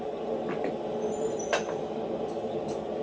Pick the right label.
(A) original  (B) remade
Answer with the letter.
A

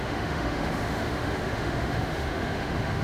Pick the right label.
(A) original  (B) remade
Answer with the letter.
B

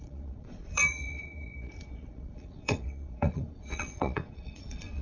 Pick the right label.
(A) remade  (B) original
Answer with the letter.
A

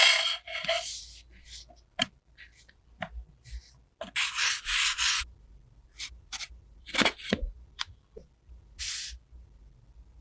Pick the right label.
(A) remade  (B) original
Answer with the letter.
B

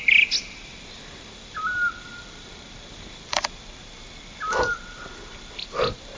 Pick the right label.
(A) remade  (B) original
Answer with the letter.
B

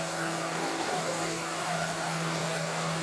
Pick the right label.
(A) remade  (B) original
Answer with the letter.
A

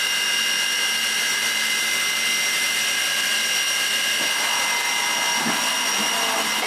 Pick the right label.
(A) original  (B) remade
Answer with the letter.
A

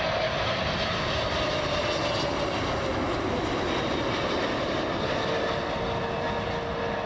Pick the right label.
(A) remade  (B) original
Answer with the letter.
B